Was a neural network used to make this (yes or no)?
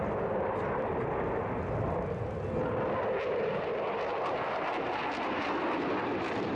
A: no